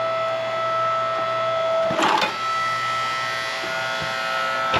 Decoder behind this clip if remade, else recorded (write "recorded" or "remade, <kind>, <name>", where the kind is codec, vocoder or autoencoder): recorded